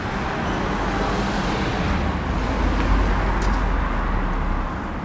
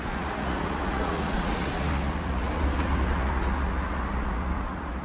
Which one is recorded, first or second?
first